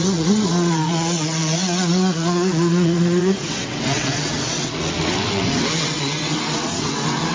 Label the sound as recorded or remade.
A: remade